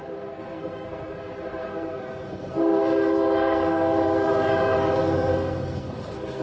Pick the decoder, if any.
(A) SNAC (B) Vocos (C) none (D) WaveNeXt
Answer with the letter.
A